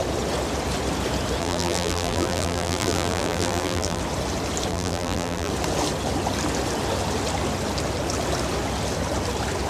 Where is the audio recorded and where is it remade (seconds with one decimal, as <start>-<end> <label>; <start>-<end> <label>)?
0.0-1.4 recorded; 1.4-4.0 remade; 4.0-4.7 recorded; 4.7-5.5 remade; 5.5-9.7 recorded